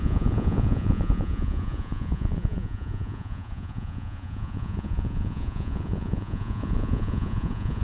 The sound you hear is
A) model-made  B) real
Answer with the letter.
A